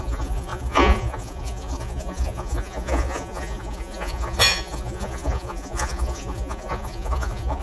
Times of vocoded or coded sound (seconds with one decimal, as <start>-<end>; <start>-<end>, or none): 0.0-7.6